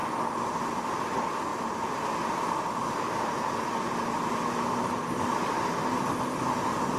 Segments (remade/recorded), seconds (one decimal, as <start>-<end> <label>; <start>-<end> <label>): 0.0-7.0 recorded